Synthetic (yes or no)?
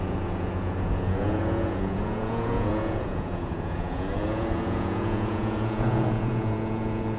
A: yes